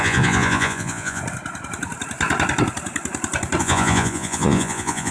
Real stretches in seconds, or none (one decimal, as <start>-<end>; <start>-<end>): 1.2-3.6